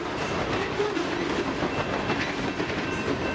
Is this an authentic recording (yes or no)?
yes